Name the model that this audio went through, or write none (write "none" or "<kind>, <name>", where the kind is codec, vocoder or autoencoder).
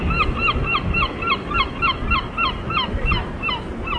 none